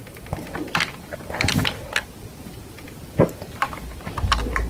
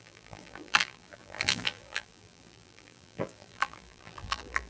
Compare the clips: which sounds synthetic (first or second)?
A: second